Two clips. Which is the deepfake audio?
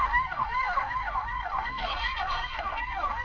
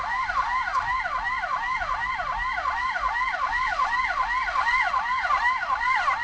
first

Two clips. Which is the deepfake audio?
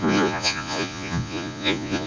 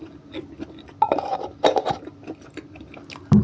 first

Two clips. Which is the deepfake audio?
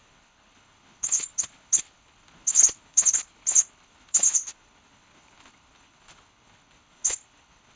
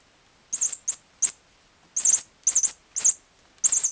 first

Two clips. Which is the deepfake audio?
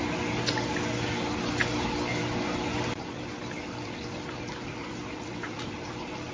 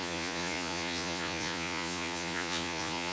second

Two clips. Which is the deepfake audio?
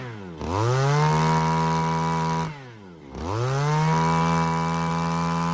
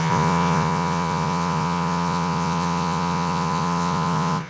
second